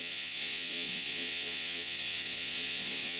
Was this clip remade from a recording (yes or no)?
yes